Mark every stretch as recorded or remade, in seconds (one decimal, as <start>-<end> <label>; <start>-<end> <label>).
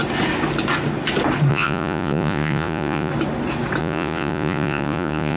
0.0-1.5 recorded; 1.5-3.1 remade; 3.1-3.8 recorded; 3.8-5.4 remade